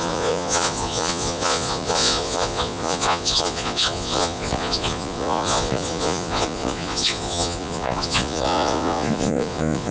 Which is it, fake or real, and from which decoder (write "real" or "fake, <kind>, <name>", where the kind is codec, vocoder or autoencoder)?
fake, vocoder, Vocos